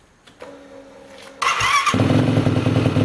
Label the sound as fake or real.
real